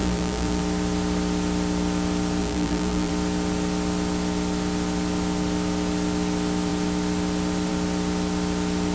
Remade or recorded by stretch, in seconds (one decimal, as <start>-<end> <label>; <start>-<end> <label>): 0.0-0.6 remade; 0.6-2.4 recorded; 2.4-3.1 remade; 3.1-8.9 recorded